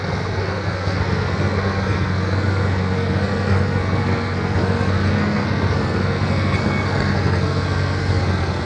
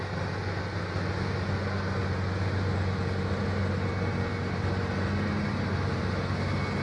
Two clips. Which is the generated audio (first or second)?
first